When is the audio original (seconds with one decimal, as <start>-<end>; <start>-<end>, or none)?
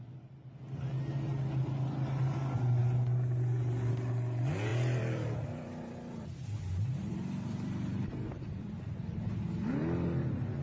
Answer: 0.0-4.7; 8.9-10.6